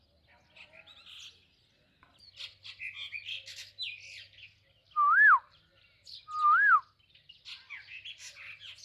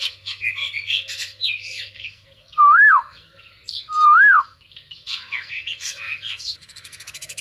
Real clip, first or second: first